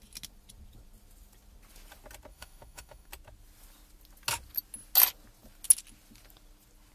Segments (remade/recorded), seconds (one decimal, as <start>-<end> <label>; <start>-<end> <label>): 0.0-2.3 recorded; 2.3-3.1 remade; 3.1-6.9 recorded